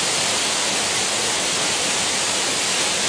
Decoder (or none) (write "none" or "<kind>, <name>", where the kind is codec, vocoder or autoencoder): none